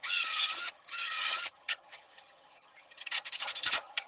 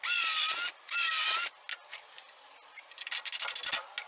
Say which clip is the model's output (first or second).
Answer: first